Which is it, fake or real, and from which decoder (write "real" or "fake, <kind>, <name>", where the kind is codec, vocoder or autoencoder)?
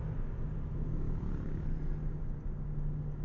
real